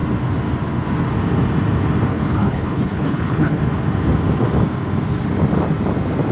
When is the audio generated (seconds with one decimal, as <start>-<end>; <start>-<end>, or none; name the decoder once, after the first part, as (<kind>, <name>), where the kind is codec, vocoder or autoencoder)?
2.1-3.6 (codec, HILCodec)